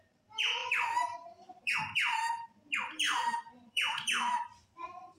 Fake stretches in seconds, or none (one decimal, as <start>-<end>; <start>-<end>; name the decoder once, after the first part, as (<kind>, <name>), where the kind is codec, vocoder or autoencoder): 0.0-5.2 (vocoder, BigVGAN v2)